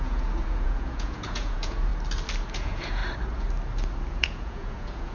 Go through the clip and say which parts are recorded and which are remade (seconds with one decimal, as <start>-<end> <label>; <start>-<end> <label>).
0.0-1.9 remade; 1.9-2.5 recorded; 2.5-3.0 remade; 3.0-4.1 recorded; 4.1-5.1 remade